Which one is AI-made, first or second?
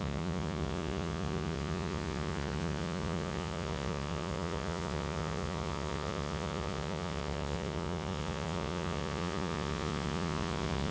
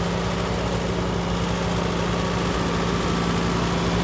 first